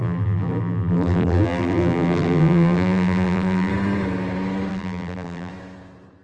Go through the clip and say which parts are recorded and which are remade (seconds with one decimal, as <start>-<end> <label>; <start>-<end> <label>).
0.0-3.7 remade; 3.7-4.7 recorded; 4.7-5.5 remade; 5.5-6.2 recorded

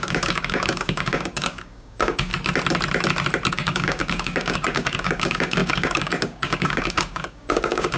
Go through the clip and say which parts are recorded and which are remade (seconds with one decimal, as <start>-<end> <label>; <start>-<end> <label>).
0.0-2.3 remade; 2.3-3.5 recorded; 3.5-8.0 remade

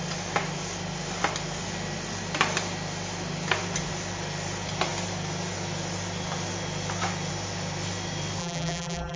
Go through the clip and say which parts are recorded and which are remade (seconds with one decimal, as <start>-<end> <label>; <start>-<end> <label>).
0.0-8.4 recorded; 8.4-9.2 remade

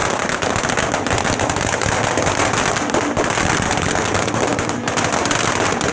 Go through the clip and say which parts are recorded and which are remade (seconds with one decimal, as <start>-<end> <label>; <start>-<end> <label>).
0.0-5.9 recorded